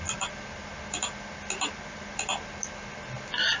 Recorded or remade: recorded